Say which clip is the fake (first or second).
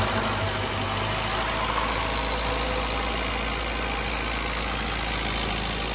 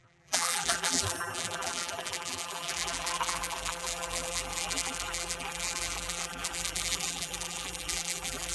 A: second